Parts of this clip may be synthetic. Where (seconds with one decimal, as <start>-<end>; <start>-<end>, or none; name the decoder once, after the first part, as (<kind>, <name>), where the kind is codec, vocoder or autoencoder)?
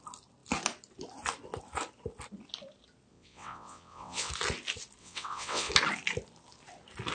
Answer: 3.1-4.3 (vocoder, WaveNeXt); 5.0-5.7